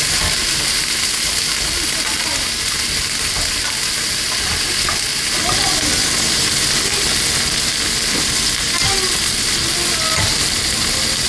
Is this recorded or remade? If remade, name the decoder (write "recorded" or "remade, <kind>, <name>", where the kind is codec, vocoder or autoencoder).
recorded